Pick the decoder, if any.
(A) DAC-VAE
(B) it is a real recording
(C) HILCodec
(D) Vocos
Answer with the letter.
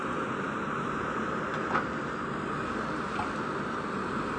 B